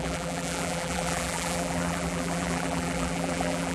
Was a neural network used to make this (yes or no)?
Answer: yes